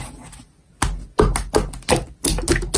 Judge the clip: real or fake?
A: real